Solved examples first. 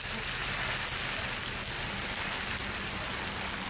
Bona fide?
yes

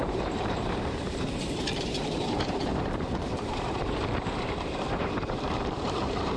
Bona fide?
no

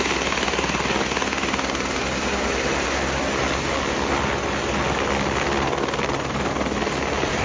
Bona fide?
yes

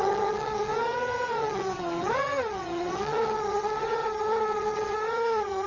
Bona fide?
no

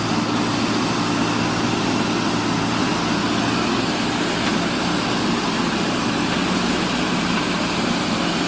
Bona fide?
yes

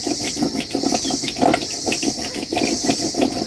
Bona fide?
yes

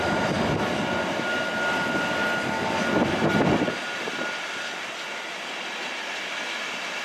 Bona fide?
yes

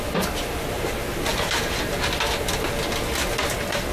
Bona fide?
yes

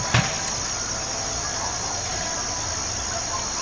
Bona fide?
yes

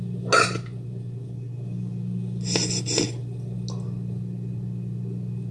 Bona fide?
yes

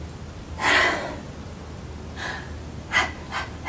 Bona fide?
yes